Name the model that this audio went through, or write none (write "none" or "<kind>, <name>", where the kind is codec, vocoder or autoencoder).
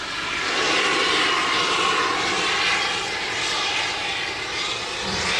none